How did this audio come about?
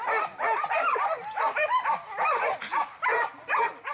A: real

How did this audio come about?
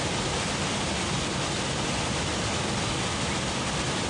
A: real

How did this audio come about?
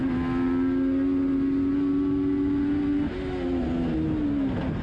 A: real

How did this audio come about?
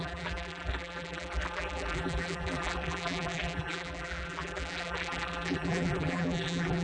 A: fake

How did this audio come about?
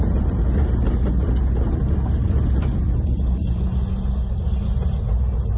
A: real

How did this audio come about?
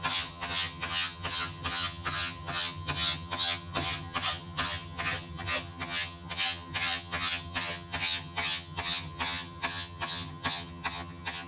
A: fake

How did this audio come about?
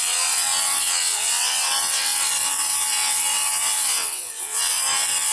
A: fake